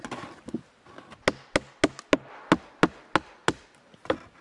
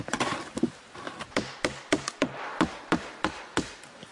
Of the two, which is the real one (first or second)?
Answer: first